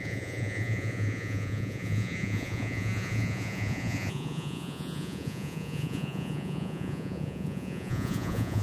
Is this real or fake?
fake